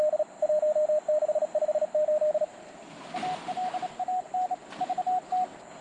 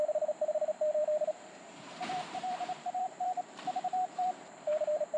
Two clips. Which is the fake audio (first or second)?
second